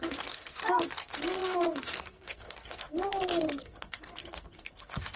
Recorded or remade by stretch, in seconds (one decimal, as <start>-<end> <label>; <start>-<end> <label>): 0.0-5.2 remade